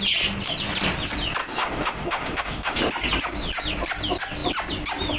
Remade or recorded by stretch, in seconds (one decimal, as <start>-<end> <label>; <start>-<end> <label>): 0.0-1.4 recorded; 1.4-2.8 remade; 2.8-5.2 recorded